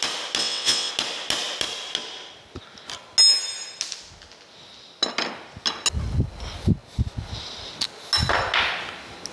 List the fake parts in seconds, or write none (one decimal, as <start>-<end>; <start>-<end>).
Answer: 0.4-0.9